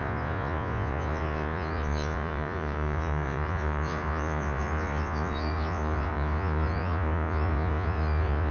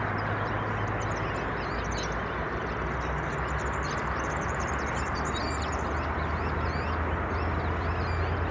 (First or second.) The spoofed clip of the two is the first